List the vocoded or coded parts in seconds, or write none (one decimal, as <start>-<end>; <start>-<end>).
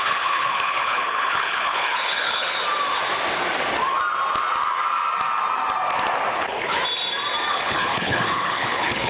0.0-2.6; 6.3-6.8; 7.5-9.1